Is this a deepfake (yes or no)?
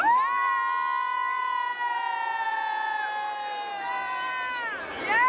no